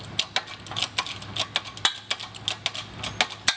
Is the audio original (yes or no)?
yes